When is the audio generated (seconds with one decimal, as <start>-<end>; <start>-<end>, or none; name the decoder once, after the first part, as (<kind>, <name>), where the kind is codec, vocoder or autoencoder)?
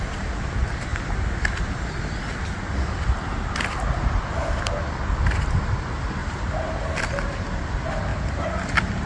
6.2-7.0 (vocoder, BigVGAN v2); 8.1-9.1